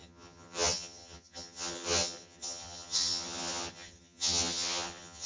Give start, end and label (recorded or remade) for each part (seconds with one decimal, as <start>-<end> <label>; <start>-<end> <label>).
0.0-5.3 remade